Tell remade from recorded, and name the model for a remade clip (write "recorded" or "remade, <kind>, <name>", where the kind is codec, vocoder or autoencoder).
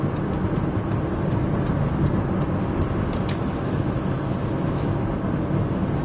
recorded